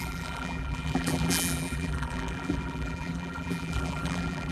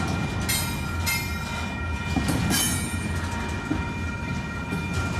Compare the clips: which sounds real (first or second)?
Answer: second